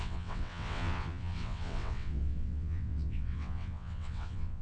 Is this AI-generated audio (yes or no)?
yes